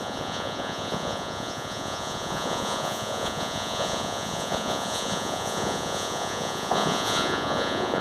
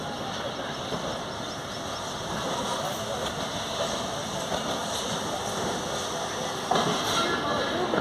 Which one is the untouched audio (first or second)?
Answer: second